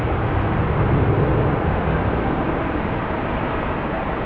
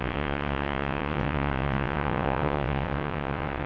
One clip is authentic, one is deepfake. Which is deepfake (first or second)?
second